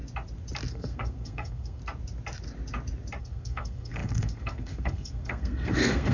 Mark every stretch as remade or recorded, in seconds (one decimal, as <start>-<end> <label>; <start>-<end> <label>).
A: 0.0-0.7 recorded; 0.7-1.8 remade; 1.8-3.2 recorded; 3.2-6.1 remade